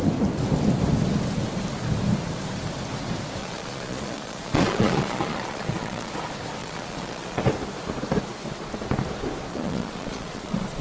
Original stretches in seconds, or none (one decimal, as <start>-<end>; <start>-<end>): 0.0-3.4; 6.1-6.6; 7.4-9.5